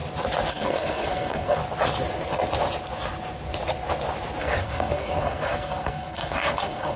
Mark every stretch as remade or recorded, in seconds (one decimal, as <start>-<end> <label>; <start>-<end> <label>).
0.0-0.5 recorded; 0.5-1.6 remade; 1.6-4.4 recorded; 4.4-7.0 remade